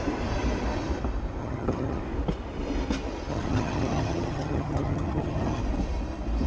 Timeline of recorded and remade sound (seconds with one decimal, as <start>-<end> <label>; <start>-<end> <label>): 0.0-1.4 recorded; 1.4-2.0 remade; 2.0-3.3 recorded; 3.3-5.6 remade; 5.6-6.5 recorded